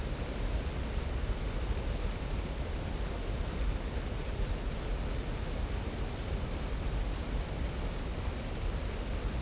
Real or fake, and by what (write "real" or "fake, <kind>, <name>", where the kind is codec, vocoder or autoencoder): real